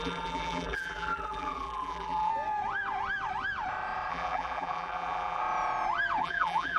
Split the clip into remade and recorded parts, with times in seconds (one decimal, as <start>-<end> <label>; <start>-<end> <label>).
0.0-2.3 remade; 2.3-4.1 recorded; 4.1-5.4 remade; 5.4-6.2 recorded; 6.2-6.8 remade